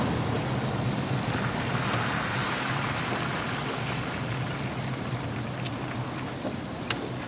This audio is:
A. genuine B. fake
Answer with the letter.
A